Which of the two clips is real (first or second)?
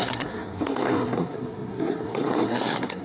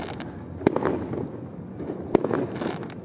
second